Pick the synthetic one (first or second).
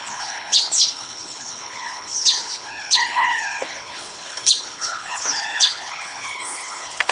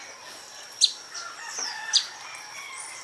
first